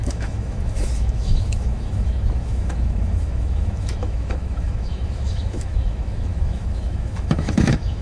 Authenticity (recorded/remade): remade